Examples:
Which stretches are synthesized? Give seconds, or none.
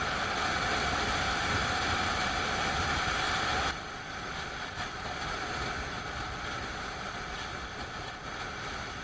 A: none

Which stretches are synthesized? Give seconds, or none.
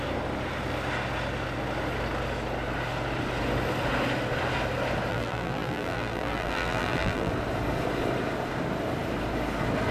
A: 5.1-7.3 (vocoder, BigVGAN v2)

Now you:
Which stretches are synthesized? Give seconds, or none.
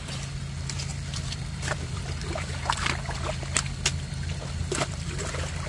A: 0.9-2.0 (vocoder, BigVGAN v2); 4.6-5.3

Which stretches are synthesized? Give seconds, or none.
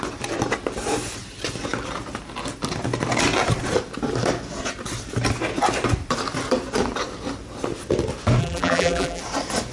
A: 8.4-9.2 (vocoder, BigVGAN v2)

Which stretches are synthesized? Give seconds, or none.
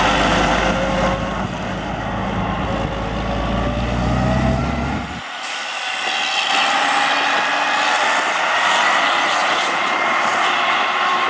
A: 9.4-11.3 (vocoder, BigVGAN v2)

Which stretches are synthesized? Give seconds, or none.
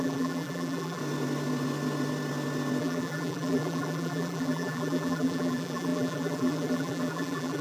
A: 0.0-1.0 (vocoder, BigVGAN v2); 2.8-7.6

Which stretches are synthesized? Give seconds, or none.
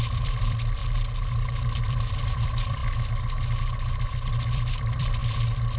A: 0.0-0.8 (vocoder, BigVGAN v2); 1.9-2.8; 3.6-5.8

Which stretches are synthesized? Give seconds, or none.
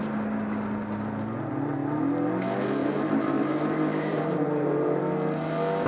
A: 2.8-5.0 (vocoder, BigVGAN v2)